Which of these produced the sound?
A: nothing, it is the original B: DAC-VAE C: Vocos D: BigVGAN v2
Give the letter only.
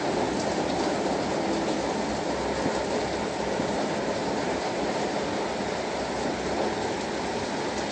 A